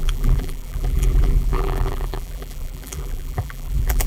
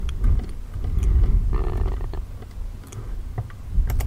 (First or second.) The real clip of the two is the second